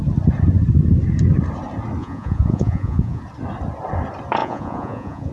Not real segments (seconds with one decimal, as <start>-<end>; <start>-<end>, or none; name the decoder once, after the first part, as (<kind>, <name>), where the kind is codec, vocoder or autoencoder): 2.0-3.2 (vocoder, Vocos); 4.4-5.3